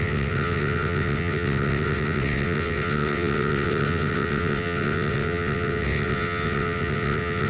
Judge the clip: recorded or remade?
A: remade